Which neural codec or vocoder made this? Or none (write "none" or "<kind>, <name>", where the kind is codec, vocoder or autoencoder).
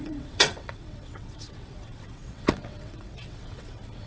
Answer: vocoder, WaveNeXt